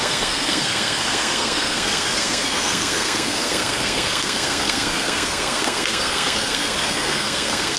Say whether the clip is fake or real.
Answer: fake